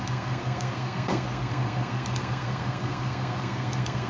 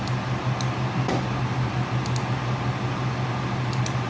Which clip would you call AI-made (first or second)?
first